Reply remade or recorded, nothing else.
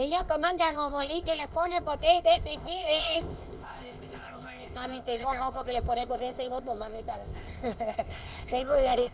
remade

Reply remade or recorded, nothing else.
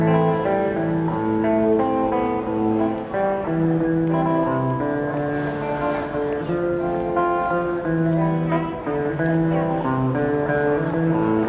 recorded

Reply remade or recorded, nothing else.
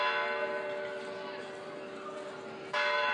recorded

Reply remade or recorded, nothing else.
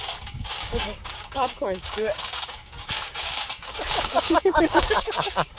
remade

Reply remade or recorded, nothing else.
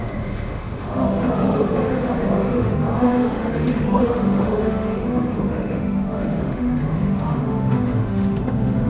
remade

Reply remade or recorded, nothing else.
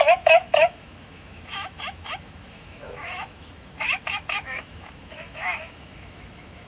remade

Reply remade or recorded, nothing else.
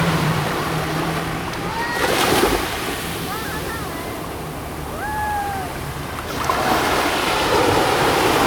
remade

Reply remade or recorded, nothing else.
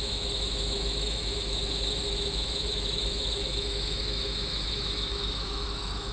remade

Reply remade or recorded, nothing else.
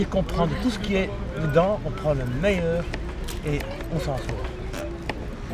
recorded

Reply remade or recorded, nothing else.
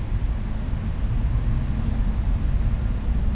recorded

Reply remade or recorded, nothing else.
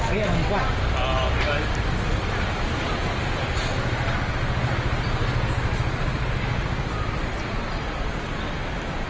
recorded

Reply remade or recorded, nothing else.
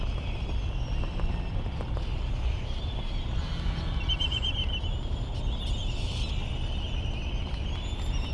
recorded